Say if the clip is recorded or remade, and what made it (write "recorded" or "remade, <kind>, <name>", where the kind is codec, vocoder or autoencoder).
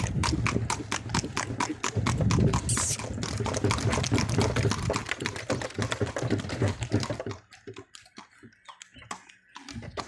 recorded